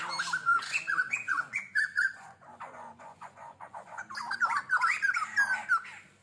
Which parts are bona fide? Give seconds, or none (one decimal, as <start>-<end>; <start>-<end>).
0.0-0.4; 4.1-6.2